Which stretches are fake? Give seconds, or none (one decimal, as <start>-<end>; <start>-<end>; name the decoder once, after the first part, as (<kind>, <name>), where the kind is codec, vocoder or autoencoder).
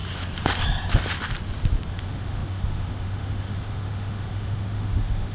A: 1.9-5.3 (autoencoder, DAC-VAE)